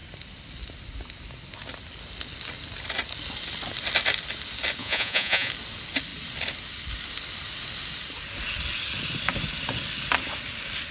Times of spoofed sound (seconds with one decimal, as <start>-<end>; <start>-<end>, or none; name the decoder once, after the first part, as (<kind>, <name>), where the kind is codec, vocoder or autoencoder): 4.8-5.5 (vocoder, Vocos)